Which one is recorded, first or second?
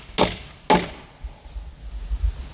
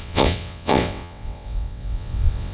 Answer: first